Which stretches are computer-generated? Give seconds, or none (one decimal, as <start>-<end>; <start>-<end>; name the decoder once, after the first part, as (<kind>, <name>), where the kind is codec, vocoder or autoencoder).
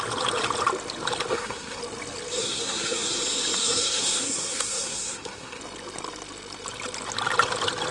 1.3-1.8 (codec, SNAC); 2.4-3.2; 3.6-5.6